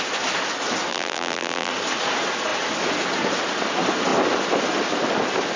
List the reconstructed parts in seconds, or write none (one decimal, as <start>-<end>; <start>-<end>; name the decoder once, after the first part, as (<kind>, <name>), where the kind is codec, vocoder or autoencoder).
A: 0.9-1.7 (vocoder, BigVGAN v2)